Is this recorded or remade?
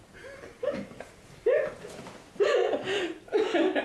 recorded